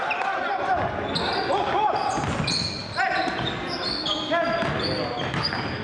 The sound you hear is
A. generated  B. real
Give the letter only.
B